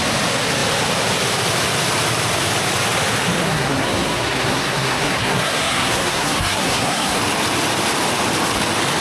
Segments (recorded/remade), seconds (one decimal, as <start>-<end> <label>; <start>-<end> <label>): 0.0-3.4 recorded; 3.4-7.2 remade; 7.2-9.0 recorded